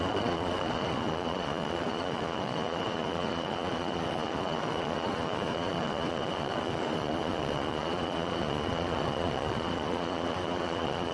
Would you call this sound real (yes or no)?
no